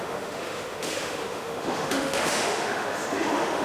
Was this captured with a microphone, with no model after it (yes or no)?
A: no